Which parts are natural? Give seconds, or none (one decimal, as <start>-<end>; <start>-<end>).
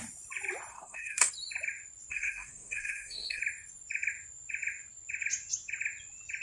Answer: 0.0-0.7; 1.3-2.1; 3.4-6.4